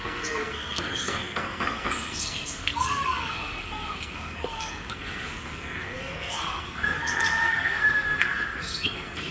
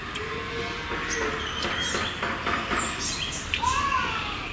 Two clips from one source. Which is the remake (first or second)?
first